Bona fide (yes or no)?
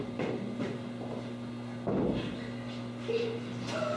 yes